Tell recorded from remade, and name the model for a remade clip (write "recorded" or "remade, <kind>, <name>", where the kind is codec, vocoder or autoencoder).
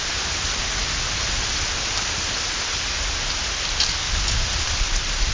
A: recorded